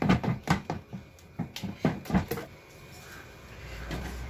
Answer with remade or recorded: recorded